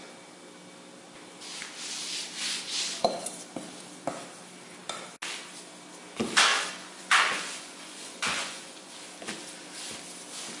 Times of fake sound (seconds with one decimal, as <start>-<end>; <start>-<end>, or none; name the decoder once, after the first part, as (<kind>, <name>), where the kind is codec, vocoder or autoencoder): 2.4-3.3 (vocoder, Vocos); 6.5-8.9